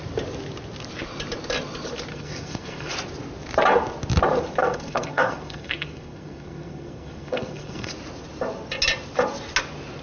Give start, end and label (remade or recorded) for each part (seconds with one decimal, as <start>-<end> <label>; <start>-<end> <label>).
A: 0.0-2.1 recorded; 2.1-2.9 remade; 2.9-4.6 recorded; 4.6-7.9 remade; 7.9-10.0 recorded